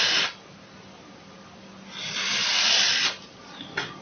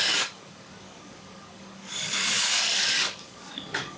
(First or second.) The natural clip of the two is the first